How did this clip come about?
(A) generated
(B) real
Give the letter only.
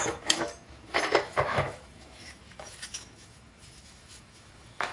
A